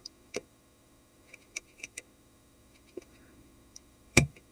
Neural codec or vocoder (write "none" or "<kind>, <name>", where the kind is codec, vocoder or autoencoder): autoencoder, DAC-VAE